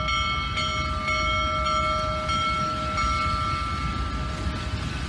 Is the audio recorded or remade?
recorded